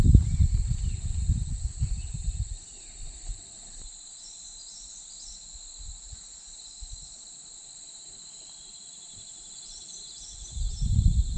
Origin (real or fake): real